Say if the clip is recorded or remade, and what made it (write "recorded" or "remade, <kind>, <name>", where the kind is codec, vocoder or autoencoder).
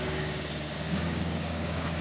remade, codec, DAC